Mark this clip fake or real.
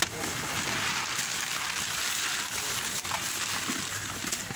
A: real